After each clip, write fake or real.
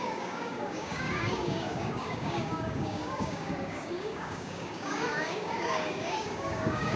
fake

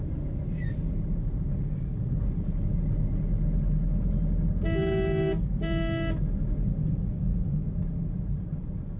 real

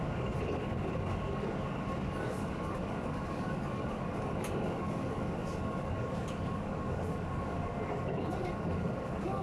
fake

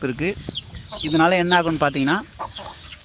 fake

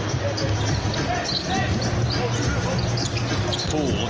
real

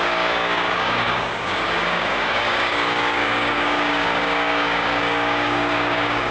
fake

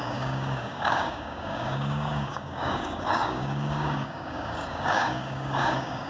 fake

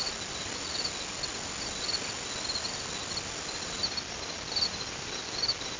real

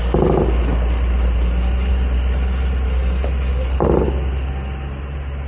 real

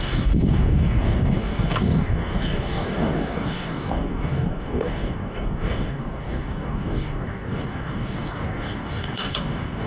fake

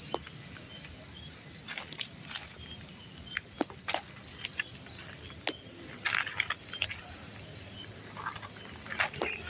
real